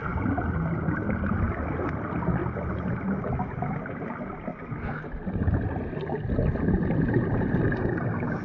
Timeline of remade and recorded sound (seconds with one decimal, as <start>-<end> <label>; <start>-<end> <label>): 0.0-8.4 recorded